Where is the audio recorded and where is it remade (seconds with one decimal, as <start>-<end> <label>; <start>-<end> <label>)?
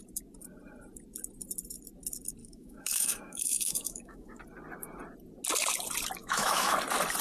0.0-2.4 recorded; 2.4-4.4 remade; 4.4-6.2 recorded; 6.2-6.8 remade; 6.8-7.2 recorded